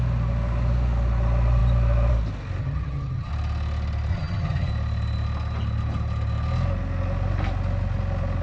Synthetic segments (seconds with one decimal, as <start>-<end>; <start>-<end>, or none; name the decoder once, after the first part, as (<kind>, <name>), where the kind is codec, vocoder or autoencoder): 2.6-3.3 (vocoder, HiFi-GAN); 4.1-4.7